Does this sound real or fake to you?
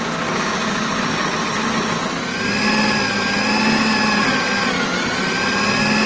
real